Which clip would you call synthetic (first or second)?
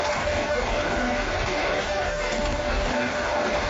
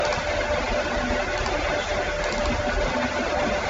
first